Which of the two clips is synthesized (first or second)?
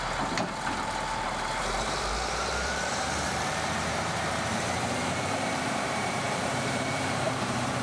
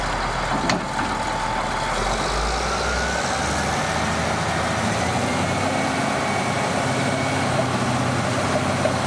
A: first